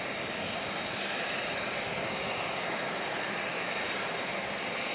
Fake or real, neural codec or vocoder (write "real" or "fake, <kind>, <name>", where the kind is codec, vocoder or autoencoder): real